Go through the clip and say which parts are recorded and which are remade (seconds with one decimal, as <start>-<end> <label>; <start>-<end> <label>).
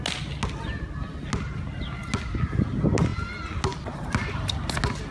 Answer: 0.0-5.1 recorded